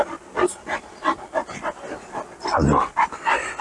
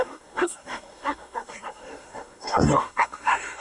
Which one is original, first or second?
first